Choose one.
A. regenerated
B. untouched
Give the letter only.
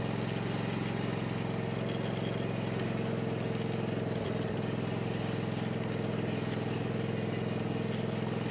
B